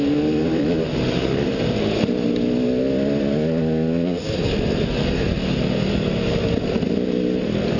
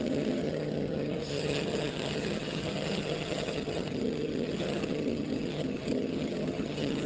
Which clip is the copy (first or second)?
second